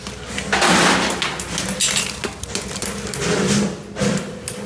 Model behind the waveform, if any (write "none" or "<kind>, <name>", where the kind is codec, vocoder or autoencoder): none